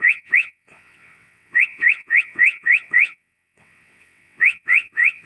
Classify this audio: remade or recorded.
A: remade